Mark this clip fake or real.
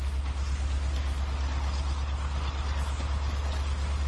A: real